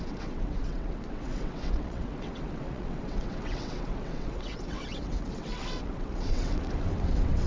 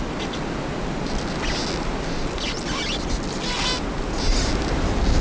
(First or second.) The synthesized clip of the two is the first